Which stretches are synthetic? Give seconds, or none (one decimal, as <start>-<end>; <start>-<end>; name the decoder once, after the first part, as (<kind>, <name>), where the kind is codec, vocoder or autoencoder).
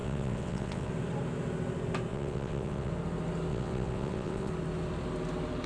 0.0-0.9 (vocoder, WaveNeXt); 2.1-2.9; 3.5-4.5